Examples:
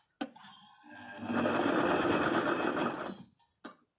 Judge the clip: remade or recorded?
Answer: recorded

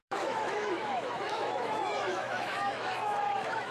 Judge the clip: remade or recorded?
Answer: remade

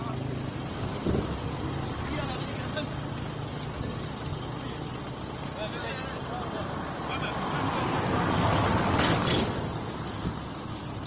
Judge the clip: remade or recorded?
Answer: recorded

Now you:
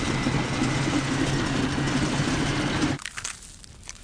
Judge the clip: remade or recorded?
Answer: recorded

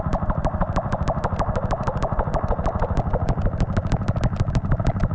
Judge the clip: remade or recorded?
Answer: recorded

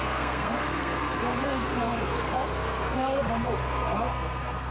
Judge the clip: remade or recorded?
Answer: remade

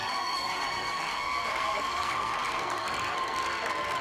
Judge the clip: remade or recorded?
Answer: remade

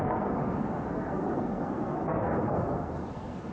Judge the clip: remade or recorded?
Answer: remade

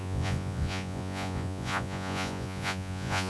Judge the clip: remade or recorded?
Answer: remade